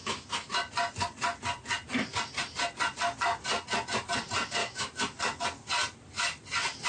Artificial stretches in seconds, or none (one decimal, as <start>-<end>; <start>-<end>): 0.0-0.5; 4.6-5.2

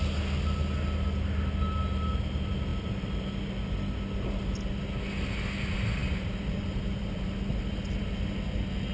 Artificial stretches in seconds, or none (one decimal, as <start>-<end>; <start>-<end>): 6.0-7.3

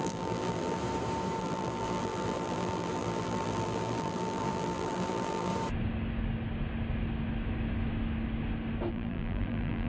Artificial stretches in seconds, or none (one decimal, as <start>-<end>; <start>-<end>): 0.0-0.8; 1.4-5.5; 8.9-9.9

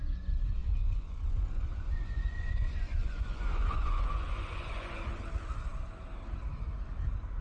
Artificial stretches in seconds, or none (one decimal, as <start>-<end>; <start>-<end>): 0.6-5.0

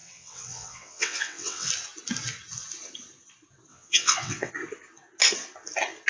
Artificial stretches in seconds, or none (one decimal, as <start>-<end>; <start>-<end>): 0.0-1.7; 3.7-4.5